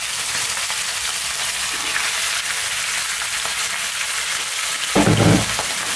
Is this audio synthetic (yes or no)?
no